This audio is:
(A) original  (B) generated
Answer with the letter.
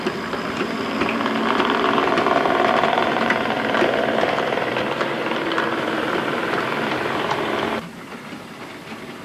B